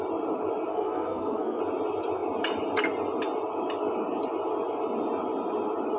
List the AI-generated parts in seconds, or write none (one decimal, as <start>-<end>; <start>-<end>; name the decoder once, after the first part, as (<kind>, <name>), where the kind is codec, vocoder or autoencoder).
0.7-1.6 (codec, SNAC)